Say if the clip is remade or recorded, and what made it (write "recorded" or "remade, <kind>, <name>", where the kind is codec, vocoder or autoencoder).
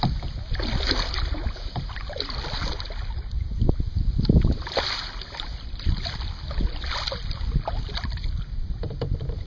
recorded